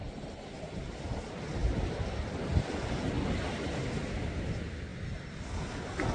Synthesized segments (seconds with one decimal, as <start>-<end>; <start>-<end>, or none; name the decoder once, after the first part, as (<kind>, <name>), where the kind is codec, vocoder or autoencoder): none